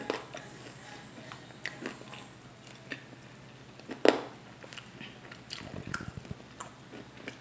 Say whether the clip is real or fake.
real